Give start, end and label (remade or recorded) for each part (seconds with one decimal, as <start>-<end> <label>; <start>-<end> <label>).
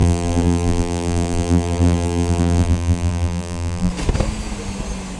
0.0-3.9 remade; 3.9-5.2 recorded